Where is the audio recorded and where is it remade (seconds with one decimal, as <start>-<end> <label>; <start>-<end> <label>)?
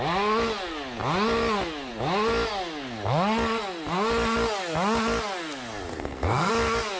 0.0-5.9 recorded; 5.9-6.5 remade; 6.5-7.0 recorded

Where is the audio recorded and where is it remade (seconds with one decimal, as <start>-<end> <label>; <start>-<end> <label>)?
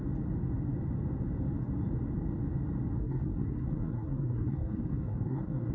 0.0-3.0 recorded; 3.0-5.7 remade